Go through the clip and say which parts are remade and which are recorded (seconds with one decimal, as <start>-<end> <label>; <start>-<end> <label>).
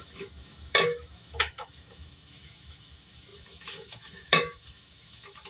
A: 0.0-5.5 remade